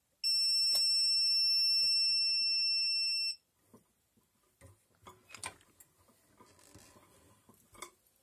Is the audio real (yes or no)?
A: yes